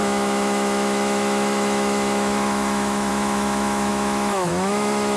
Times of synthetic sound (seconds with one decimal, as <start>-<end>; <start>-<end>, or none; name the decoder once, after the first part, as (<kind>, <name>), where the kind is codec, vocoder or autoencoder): 0.0-5.2 (autoencoder, DAC-VAE)

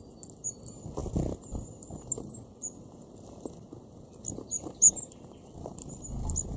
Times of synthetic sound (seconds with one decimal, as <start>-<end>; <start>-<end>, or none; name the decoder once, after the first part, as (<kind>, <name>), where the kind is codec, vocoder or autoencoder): none